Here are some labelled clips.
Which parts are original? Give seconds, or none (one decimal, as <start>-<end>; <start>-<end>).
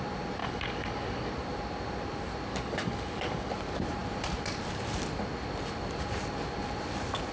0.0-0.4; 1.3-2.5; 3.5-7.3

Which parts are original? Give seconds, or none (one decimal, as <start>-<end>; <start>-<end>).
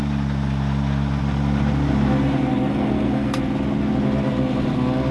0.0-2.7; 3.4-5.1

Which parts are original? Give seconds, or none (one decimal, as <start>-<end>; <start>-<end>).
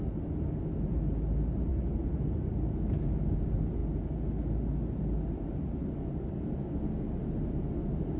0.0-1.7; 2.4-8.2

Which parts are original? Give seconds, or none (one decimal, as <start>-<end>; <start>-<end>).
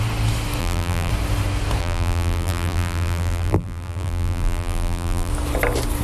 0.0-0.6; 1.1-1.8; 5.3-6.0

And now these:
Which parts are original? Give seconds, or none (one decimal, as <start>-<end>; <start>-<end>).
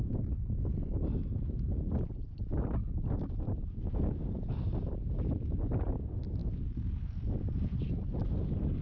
0.0-8.8